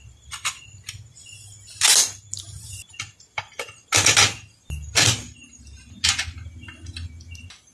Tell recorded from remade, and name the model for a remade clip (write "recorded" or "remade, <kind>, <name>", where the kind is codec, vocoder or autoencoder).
recorded